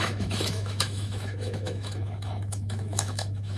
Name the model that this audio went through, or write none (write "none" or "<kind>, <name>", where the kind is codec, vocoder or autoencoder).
autoencoder, DAC-VAE